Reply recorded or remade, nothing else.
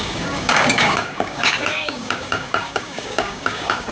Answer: remade